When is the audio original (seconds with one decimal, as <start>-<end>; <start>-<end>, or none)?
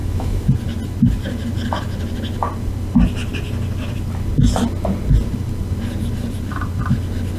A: 0.5-7.4